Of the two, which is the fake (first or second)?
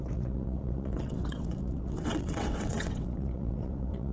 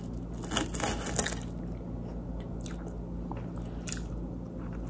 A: first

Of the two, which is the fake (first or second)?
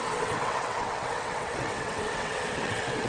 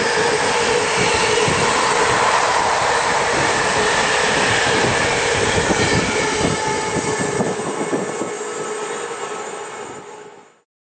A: first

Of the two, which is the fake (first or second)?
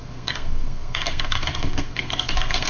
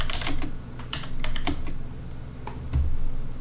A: first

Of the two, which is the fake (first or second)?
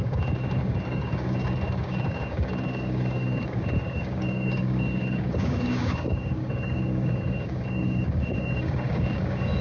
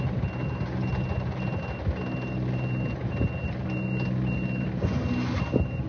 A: first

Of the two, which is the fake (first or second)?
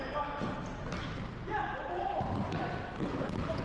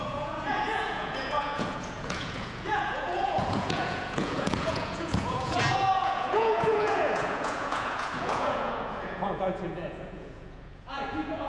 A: second